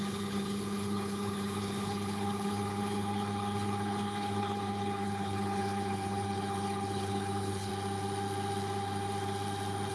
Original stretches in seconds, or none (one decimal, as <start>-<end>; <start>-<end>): 7.7-9.9